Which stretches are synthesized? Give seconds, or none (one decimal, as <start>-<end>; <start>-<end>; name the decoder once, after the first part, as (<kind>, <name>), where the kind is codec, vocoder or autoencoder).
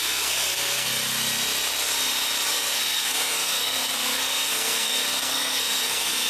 0.0-0.9 (codec, SNAC); 2.5-6.3